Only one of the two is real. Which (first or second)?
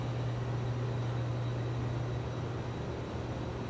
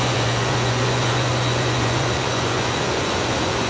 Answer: first